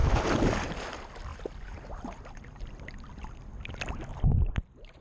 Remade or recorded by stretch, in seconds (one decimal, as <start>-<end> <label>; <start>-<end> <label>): 0.0-1.3 recorded; 1.3-2.7 remade; 2.7-4.1 recorded; 4.1-5.0 remade